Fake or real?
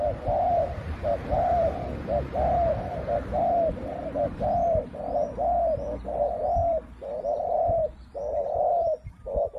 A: fake